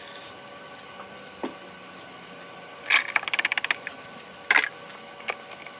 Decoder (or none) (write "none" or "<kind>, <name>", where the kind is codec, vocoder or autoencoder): none